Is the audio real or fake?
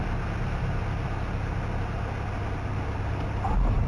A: real